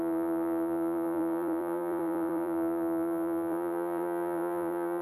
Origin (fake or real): fake